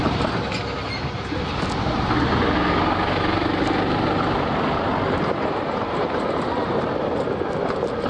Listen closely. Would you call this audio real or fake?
real